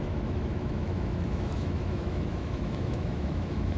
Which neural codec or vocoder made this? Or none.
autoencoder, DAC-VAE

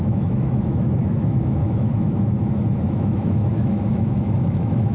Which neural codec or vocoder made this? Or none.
autoencoder, DAC-VAE